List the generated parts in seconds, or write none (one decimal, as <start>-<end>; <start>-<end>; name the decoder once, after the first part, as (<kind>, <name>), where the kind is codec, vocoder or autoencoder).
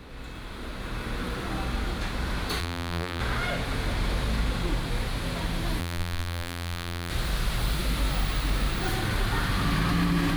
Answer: 2.6-3.2 (vocoder, BigVGAN v2); 5.8-7.1